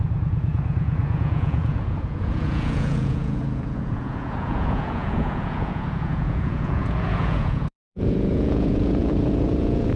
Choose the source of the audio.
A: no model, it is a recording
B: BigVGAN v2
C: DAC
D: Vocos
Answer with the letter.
D